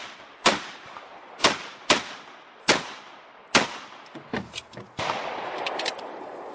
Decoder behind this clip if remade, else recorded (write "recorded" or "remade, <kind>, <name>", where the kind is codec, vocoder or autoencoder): recorded